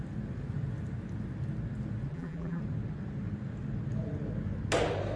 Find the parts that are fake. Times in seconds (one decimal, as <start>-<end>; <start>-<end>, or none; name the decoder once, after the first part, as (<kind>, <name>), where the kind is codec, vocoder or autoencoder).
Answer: 2.1-2.6 (vocoder, BigVGAN v2)

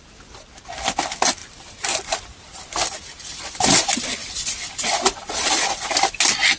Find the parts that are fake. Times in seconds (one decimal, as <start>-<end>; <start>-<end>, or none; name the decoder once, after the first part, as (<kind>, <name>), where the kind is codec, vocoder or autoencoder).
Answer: 1.4-2.0 (vocoder, BigVGAN v2)